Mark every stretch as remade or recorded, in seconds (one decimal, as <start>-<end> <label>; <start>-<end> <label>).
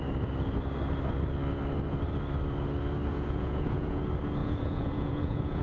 0.0-3.1 recorded; 3.1-4.0 remade; 4.0-4.4 recorded; 4.4-5.6 remade